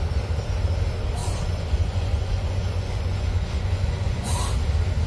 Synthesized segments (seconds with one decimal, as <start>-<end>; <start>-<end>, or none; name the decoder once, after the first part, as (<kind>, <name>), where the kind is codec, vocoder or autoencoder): 1.2-4.3 (vocoder, Vocos)